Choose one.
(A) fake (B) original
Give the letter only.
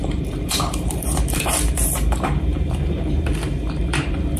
A